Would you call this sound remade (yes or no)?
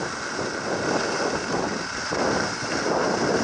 no